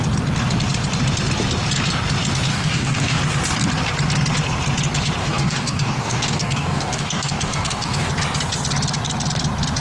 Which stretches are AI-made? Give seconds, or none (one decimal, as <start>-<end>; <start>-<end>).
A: 2.5-3.2; 5.2-8.1